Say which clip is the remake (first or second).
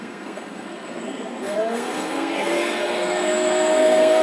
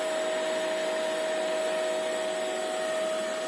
first